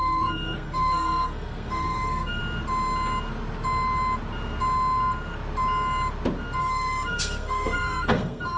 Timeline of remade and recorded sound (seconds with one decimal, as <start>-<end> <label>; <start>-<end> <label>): 0.0-2.4 remade; 2.4-6.6 recorded; 6.6-8.6 remade